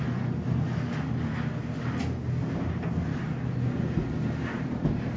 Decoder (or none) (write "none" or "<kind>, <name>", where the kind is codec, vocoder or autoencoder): none